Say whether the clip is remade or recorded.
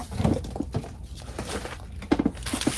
recorded